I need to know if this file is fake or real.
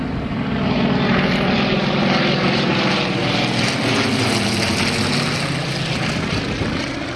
real